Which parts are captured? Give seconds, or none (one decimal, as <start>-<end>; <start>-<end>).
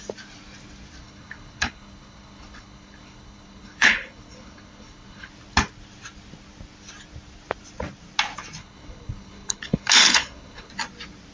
0.0-1.0; 5.3-8.6; 10.7-11.3